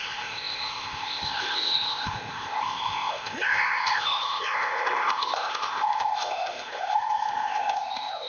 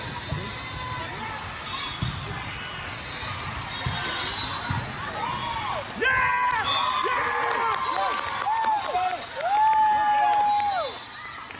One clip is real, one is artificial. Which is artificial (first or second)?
first